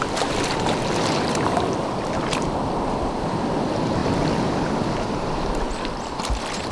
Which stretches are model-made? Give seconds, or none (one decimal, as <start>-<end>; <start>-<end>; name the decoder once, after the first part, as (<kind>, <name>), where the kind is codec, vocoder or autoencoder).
0.0-6.7 (vocoder, BigVGAN v2)